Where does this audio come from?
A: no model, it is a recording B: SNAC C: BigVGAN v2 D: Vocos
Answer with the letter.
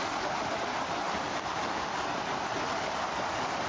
A